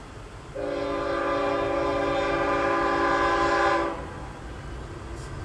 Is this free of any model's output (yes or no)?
yes